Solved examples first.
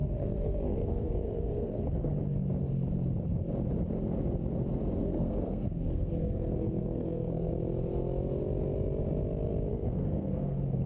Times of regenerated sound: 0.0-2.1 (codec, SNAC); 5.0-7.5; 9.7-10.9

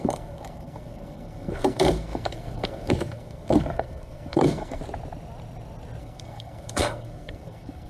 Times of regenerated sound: 0.0-4.8 (codec, SNAC); 6.0-7.9

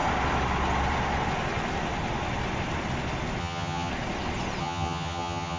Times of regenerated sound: 3.4-3.9 (vocoder, HiFi-GAN); 4.6-5.6

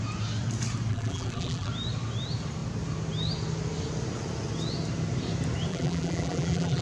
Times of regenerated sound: 0.9-1.7 (vocoder, BigVGAN v2); 5.7-6.8